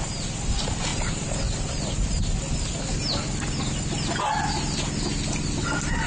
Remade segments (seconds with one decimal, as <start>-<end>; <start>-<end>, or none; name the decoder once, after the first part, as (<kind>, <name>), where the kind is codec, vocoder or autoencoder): 0.9-2.2 (vocoder, BigVGAN v2)